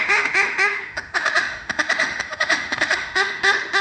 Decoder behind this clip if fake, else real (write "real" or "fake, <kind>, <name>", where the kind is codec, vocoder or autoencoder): fake, autoencoder, DAC-VAE